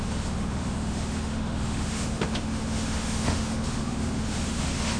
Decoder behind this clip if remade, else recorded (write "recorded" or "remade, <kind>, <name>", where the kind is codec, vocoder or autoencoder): remade, autoencoder, DAC-VAE